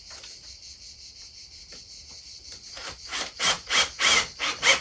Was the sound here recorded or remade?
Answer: recorded